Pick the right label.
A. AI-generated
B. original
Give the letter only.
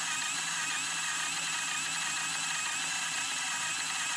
B